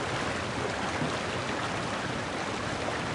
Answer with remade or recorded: recorded